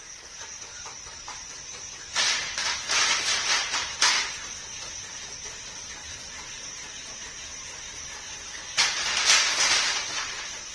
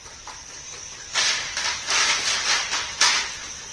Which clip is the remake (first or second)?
first